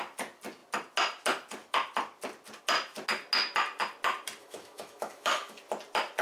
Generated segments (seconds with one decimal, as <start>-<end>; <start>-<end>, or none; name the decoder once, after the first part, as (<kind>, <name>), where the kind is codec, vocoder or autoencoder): 4.4-5.6 (autoencoder, DAC-VAE)